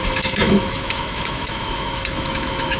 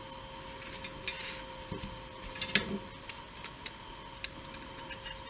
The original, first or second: second